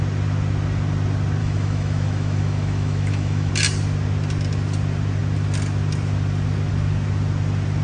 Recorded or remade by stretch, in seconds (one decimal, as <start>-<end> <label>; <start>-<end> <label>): 0.0-1.4 recorded; 1.4-3.5 remade; 3.5-7.8 recorded